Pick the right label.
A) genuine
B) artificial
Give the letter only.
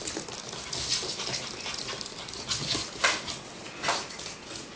A